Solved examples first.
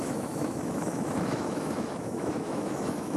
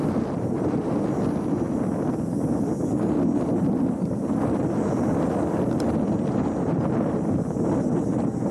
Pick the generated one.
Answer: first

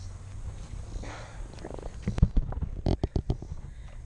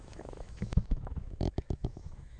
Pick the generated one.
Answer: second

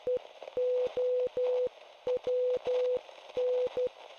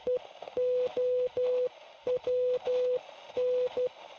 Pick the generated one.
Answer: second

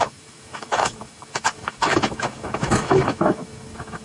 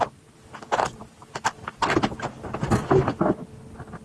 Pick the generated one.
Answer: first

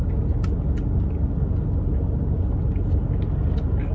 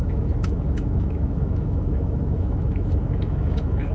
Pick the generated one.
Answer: second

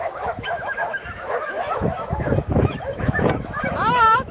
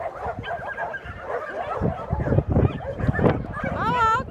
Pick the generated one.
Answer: first